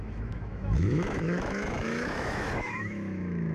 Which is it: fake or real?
fake